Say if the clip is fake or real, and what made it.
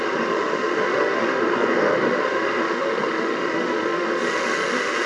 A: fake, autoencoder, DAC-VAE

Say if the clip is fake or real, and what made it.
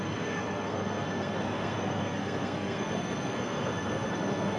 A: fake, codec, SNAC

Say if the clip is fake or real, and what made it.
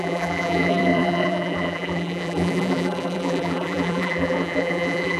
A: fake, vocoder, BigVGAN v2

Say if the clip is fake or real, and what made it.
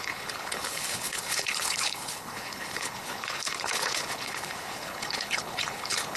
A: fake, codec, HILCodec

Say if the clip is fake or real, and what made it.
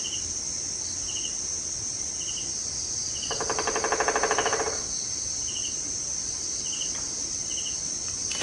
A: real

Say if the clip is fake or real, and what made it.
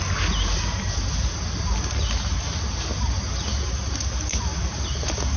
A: real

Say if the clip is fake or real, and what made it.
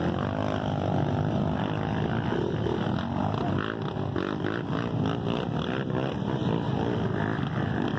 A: real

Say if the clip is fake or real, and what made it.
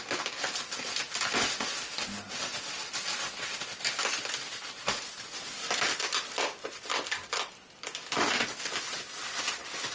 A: real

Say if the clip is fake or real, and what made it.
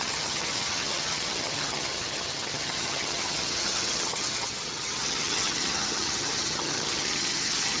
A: fake, vocoder, HiFi-GAN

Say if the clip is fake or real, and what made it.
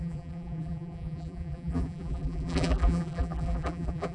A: fake, vocoder, BigVGAN v2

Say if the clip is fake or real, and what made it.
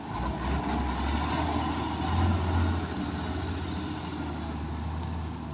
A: real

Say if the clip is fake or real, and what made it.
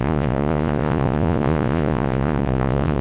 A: fake, vocoder, Vocos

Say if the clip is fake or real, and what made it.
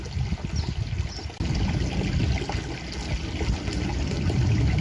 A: real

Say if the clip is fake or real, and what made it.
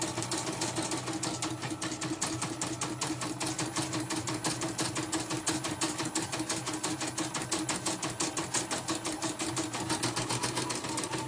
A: real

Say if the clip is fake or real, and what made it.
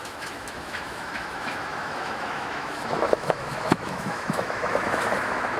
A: fake, autoencoder, DAC-VAE